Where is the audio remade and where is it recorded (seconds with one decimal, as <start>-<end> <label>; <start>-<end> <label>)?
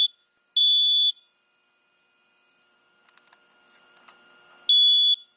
0.0-5.4 recorded